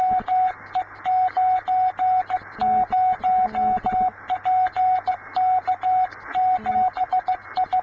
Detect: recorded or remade recorded